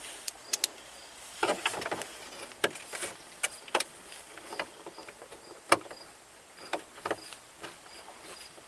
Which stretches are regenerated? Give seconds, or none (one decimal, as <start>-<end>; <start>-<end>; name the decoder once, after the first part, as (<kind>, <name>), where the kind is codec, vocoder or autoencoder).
none